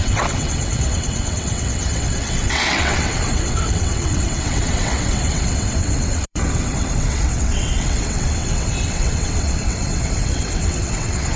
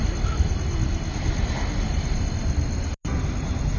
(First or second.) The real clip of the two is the second